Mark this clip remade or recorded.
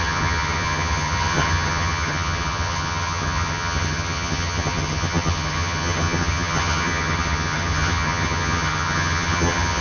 remade